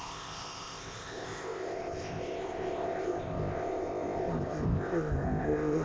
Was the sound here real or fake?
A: fake